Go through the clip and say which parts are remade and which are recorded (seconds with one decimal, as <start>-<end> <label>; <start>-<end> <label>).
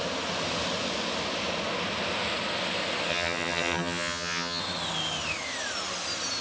0.0-3.1 recorded; 3.1-4.6 remade; 4.6-6.4 recorded